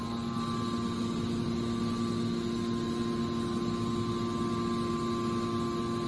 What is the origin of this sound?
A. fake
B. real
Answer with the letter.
B